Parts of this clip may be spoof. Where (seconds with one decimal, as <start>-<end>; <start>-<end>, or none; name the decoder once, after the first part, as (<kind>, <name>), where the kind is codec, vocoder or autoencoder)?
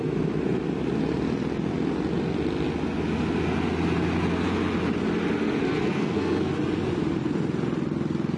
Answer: 5.6-6.5 (codec, SNAC)